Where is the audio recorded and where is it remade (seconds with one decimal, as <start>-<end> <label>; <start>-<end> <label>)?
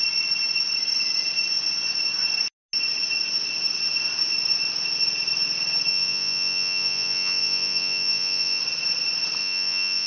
0.0-5.9 recorded; 5.9-8.6 remade; 8.6-9.4 recorded; 9.4-10.1 remade